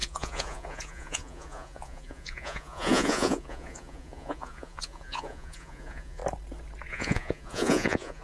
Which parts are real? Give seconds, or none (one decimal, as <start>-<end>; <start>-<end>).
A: 6.2-6.9

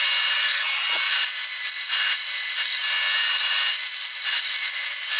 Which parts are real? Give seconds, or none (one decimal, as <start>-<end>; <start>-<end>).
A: 0.0-5.2